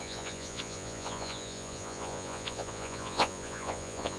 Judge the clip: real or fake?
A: fake